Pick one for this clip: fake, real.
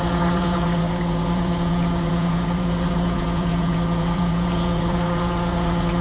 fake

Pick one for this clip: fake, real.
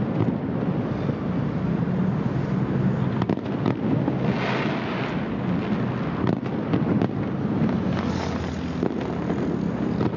real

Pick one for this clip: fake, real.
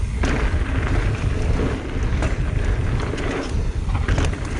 real